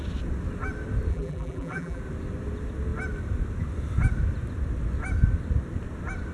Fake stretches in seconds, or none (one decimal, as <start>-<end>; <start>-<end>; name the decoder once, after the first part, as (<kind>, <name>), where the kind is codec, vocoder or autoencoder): 1.1-2.0 (vocoder, BigVGAN v2)